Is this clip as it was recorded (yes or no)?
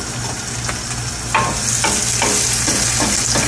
yes